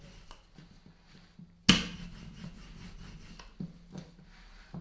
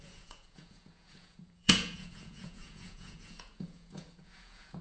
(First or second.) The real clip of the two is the first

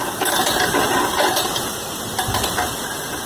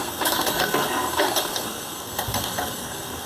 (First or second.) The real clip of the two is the first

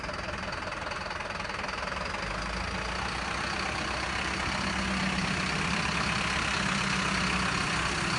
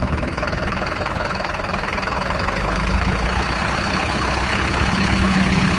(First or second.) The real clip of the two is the first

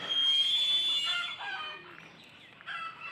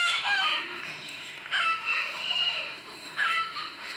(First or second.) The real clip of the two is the first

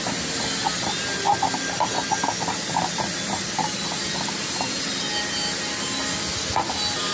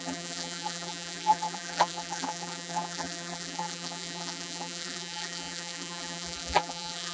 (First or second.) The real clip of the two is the first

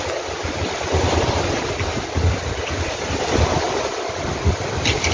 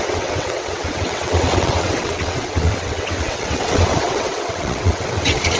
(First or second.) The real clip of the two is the first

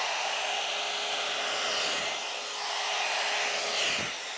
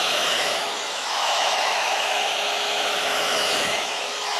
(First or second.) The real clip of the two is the first